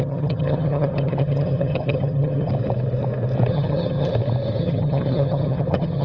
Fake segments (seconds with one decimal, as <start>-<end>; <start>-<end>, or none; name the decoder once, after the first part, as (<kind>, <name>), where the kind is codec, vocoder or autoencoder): 0.0-2.5 (vocoder, HiFi-GAN); 3.5-4.1; 4.6-6.0